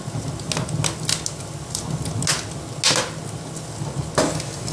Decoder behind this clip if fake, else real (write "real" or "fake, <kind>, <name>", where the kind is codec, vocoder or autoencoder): real